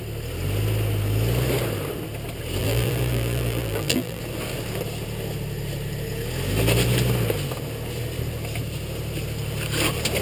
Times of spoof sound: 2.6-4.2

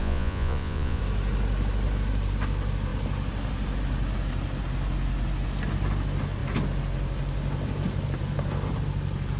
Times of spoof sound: 0.0-1.0

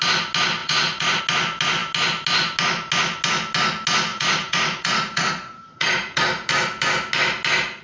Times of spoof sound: 0.6-1.2; 4.1-6.5

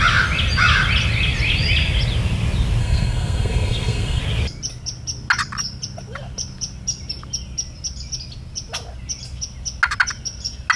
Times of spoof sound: 2.8-4.2